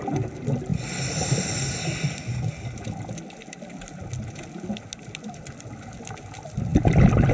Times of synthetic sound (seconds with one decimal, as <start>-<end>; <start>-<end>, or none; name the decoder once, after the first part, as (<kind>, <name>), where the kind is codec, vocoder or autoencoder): none